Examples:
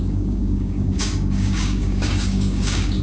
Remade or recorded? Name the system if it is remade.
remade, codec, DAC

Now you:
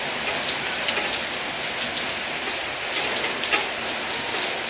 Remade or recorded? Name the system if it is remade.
recorded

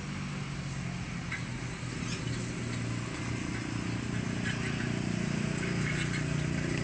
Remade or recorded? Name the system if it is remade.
recorded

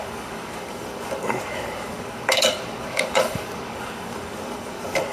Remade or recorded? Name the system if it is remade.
remade, codec, DAC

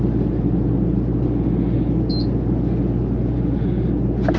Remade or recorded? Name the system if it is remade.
recorded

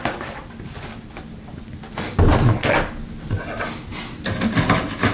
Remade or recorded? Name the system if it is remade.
recorded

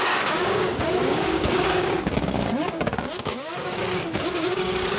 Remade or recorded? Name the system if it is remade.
remade, codec, DAC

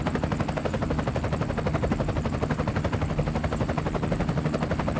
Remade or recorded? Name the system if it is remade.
recorded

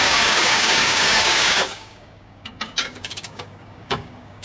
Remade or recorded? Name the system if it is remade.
remade, codec, DAC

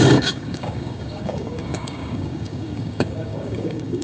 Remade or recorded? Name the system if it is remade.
remade, codec, DAC